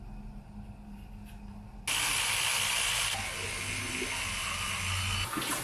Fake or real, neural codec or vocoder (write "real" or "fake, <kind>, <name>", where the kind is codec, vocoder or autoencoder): real